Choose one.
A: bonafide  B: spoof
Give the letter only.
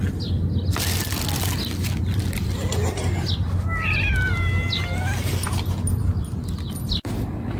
A